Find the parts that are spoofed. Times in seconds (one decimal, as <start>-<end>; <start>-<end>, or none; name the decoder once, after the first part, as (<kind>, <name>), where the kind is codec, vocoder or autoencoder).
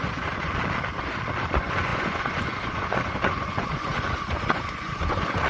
0.0-0.5 (vocoder, Vocos); 1.4-5.5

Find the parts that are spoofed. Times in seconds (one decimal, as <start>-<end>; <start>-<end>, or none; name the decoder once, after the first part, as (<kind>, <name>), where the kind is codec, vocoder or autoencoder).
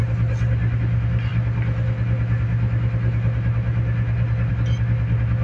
none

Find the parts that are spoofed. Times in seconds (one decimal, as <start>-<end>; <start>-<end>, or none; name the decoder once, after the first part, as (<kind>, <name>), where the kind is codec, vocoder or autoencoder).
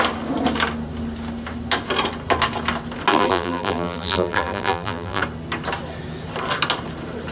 3.1-5.2 (vocoder, BigVGAN v2)